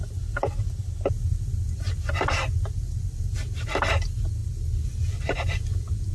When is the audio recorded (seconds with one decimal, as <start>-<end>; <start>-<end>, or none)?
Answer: 0.0-6.1